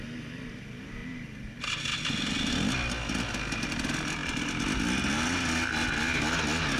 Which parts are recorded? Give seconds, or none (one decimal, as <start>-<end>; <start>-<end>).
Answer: 0.0-6.8